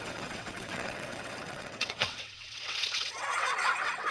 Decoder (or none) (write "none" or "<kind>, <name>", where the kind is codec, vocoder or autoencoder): vocoder, WaveNeXt